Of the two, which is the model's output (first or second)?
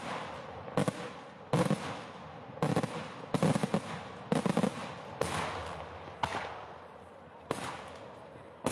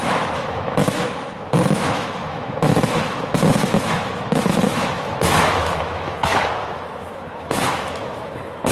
second